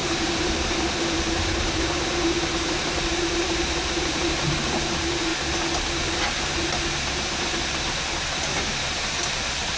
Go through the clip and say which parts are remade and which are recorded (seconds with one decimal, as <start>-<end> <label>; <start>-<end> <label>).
0.0-5.3 remade; 5.3-6.5 recorded; 6.5-9.8 remade

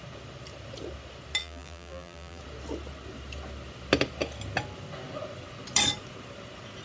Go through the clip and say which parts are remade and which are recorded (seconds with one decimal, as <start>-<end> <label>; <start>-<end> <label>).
0.0-1.4 recorded; 1.4-2.4 remade; 2.4-6.8 recorded

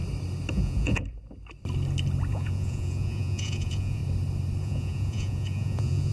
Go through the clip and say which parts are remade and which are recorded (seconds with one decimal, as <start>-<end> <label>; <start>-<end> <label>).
0.0-0.5 recorded; 0.5-1.0 remade; 1.0-2.3 recorded; 2.3-4.0 remade; 4.0-4.6 recorded; 4.6-6.1 remade

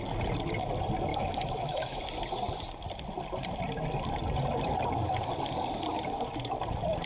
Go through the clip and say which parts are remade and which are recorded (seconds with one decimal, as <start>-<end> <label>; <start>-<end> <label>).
0.0-1.1 recorded; 1.1-2.0 remade; 2.0-7.1 recorded

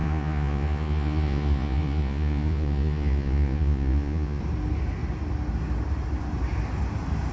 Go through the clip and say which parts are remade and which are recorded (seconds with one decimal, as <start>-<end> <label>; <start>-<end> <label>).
0.0-4.4 remade; 4.4-7.3 recorded

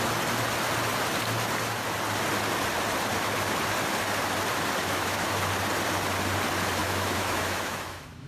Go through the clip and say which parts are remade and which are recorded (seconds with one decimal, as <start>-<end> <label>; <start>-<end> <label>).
0.0-4.8 recorded; 4.8-5.4 remade; 5.4-6.8 recorded; 6.8-8.3 remade

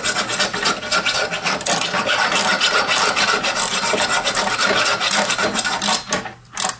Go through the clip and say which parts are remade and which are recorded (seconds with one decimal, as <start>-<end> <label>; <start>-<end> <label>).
0.0-3.7 recorded; 3.7-4.5 remade; 4.5-6.8 recorded

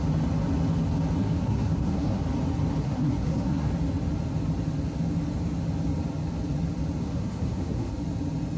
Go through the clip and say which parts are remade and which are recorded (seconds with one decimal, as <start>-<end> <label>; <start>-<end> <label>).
0.0-1.2 recorded; 1.2-2.2 remade; 2.2-2.8 recorded; 2.8-3.7 remade; 3.7-7.0 recorded; 7.0-7.9 remade; 7.9-8.6 recorded